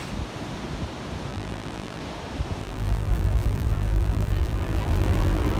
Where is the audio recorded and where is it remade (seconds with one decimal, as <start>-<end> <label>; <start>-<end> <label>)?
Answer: 0.0-1.3 recorded; 1.3-2.0 remade; 2.0-2.6 recorded; 2.6-5.6 remade